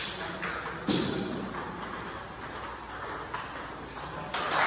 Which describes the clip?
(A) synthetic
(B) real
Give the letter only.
B